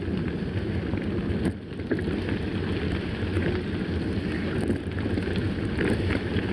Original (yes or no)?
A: yes